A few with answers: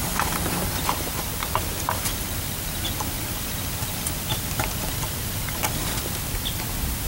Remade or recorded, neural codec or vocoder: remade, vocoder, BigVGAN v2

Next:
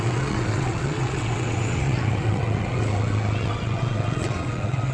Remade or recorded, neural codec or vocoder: remade, vocoder, WaveNeXt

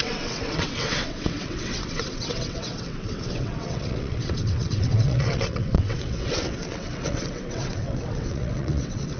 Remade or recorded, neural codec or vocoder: remade, vocoder, WaveNeXt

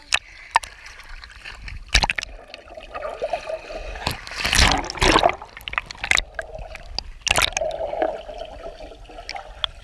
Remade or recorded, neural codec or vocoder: recorded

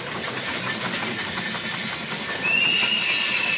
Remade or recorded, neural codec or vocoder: recorded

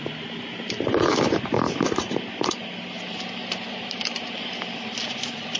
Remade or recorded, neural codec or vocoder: recorded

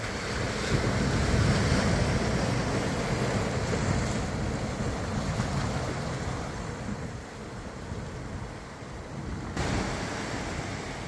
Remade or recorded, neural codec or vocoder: recorded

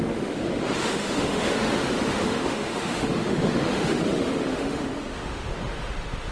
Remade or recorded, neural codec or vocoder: remade, autoencoder, DAC-VAE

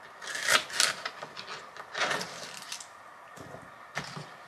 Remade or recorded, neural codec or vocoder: recorded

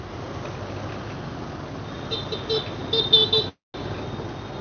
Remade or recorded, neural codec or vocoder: recorded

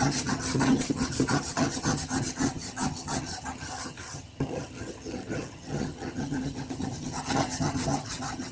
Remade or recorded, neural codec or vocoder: remade, vocoder, HiFi-GAN